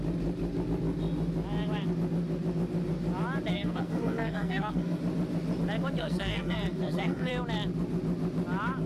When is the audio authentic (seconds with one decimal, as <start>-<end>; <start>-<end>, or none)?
0.0-3.5; 5.0-6.0; 7.3-8.9